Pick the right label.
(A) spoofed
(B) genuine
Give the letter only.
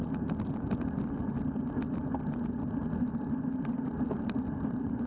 B